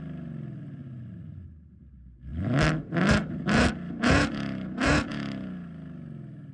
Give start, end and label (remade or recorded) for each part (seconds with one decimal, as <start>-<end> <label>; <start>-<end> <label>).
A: 0.0-6.5 recorded